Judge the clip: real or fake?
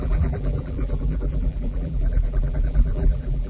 fake